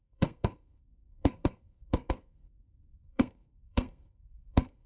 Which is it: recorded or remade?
remade